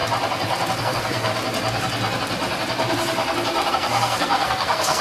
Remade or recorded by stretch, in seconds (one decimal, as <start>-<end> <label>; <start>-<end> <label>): 0.0-0.8 recorded; 0.8-1.3 remade; 1.3-3.7 recorded; 3.7-5.0 remade